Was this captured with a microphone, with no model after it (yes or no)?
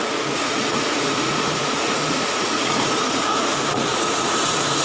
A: no